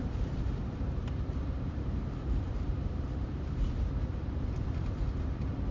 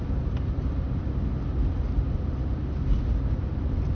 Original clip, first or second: second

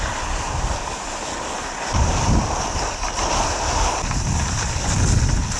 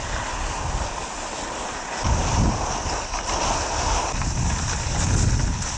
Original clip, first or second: second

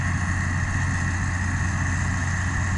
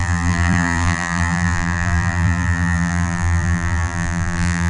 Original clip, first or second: first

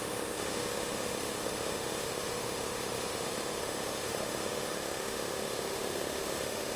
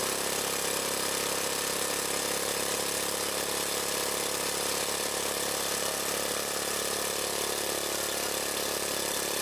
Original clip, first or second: second